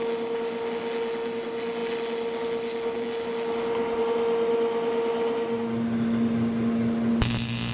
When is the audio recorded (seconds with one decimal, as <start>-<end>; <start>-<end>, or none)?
0.0-7.7